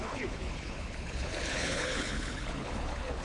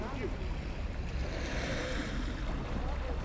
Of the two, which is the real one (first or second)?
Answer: second